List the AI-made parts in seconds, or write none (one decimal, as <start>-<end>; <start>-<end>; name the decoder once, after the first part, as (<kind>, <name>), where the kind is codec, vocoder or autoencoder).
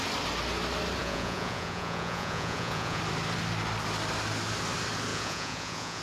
1.0-3.0 (vocoder, Vocos); 5.1-6.0